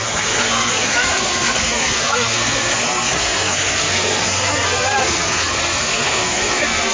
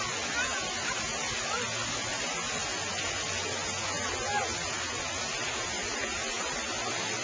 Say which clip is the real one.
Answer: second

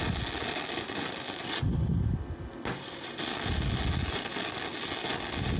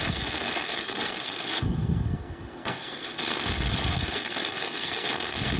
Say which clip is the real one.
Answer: first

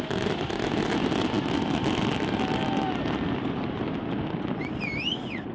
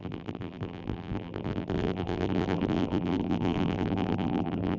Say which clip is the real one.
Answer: first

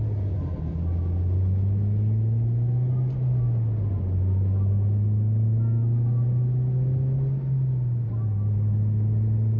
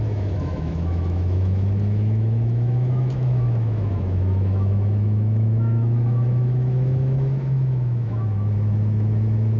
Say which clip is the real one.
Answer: first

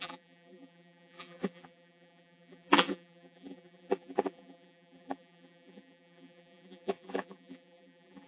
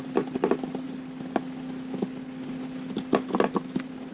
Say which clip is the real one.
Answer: second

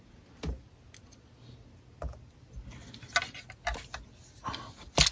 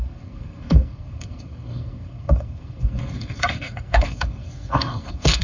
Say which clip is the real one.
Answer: first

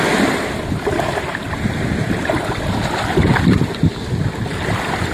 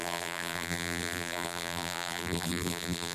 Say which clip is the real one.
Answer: first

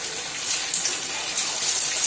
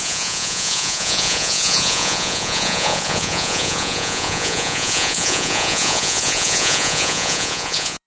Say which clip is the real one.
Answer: first